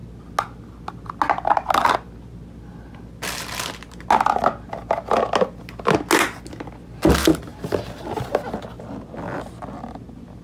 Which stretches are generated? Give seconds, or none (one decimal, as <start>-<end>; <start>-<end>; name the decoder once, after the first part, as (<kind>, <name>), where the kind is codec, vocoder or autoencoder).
none